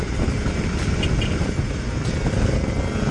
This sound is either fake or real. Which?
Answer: real